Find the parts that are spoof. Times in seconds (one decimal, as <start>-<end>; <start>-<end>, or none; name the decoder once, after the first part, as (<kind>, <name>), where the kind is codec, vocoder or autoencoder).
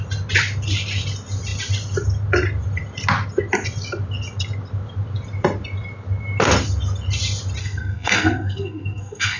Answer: 7.6-9.4 (codec, SNAC)